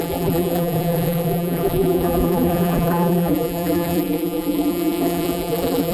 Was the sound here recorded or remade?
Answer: remade